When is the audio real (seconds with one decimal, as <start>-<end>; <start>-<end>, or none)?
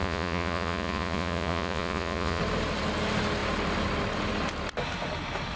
2.4-5.6